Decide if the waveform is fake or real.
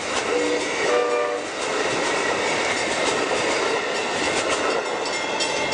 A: real